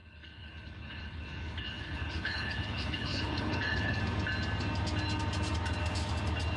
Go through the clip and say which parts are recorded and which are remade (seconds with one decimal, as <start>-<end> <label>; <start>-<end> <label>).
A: 0.0-4.0 remade; 4.0-6.6 recorded